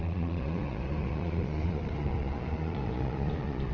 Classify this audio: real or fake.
fake